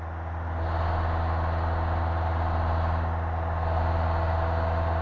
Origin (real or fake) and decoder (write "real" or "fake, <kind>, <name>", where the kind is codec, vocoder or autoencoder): real